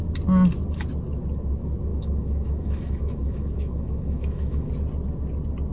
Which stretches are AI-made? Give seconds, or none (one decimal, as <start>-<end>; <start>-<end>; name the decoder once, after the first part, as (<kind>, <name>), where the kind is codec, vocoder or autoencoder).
1.9-4.7 (autoencoder, DAC-VAE)